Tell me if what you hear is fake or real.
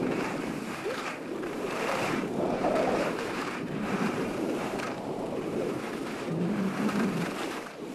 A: fake